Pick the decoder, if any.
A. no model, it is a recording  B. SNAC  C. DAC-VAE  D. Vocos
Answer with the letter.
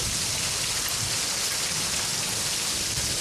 A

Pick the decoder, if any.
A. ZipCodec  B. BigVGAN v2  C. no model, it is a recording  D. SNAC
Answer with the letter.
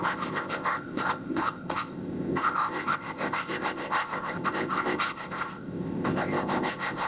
A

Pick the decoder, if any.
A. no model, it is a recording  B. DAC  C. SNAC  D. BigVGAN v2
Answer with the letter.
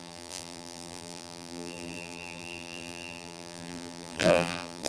D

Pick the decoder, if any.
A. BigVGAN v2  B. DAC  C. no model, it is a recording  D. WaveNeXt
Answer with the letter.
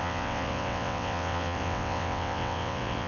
D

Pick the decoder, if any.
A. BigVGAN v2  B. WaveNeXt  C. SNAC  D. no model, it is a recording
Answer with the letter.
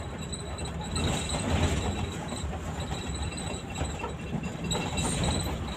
D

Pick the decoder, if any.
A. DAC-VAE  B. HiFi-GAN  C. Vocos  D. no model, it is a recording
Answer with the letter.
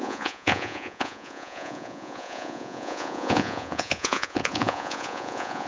C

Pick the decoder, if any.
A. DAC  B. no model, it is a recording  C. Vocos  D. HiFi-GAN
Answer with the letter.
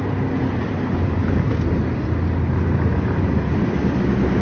B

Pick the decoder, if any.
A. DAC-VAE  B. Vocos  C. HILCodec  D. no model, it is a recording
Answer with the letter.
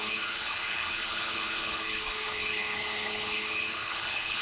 C